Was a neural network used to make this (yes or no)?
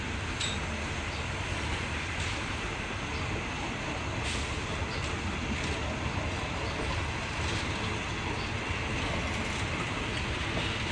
no